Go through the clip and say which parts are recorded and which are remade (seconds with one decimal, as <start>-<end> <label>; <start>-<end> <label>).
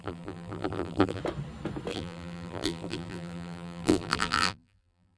0.0-1.2 remade; 1.2-1.9 recorded; 1.9-5.2 remade